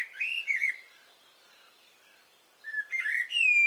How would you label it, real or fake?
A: fake